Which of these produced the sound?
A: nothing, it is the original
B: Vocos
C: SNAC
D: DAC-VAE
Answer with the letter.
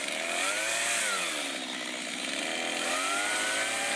A